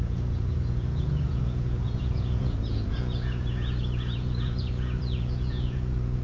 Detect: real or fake fake